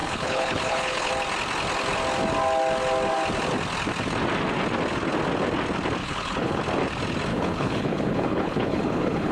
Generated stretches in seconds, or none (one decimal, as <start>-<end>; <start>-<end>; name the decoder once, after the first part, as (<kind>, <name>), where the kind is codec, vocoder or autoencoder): 0.0-1.1 (codec, HILCodec); 6.0-6.6; 7.3-9.3